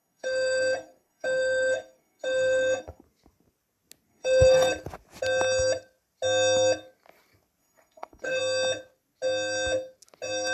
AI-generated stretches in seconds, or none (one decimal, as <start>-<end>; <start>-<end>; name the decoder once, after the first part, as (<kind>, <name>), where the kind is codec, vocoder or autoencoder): 0.0-3.0 (codec, SNAC); 4.1-4.7; 7.6-8.4